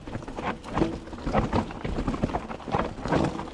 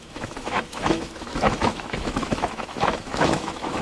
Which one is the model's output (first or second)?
second